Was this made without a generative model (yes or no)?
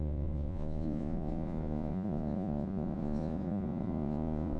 no